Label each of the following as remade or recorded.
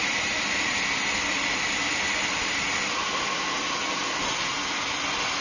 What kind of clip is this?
recorded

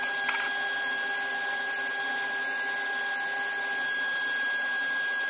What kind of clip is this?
recorded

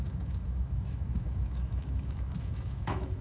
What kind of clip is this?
remade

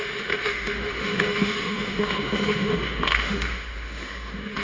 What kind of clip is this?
remade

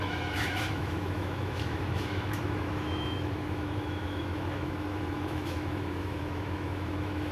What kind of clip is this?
remade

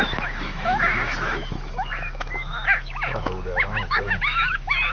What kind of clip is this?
remade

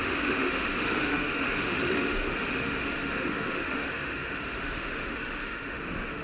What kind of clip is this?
remade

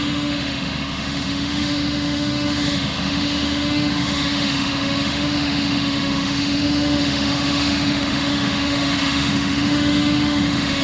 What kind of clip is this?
remade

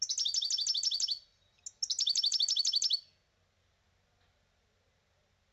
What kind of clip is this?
recorded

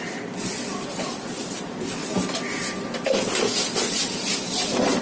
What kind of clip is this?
recorded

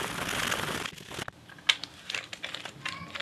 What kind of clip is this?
recorded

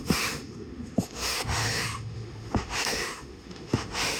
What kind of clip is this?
remade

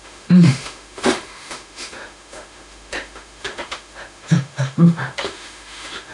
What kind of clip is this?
remade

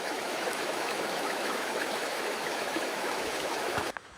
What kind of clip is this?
remade